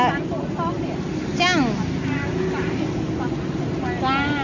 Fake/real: real